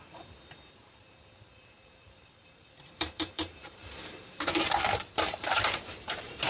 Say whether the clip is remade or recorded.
remade